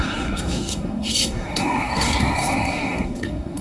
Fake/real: fake